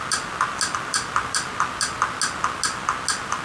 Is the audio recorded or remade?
recorded